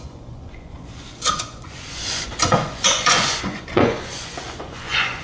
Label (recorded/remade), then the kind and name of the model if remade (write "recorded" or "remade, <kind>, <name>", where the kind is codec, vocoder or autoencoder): remade, vocoder, Vocos